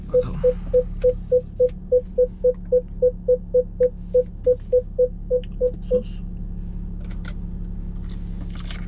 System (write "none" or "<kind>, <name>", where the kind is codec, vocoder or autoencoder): none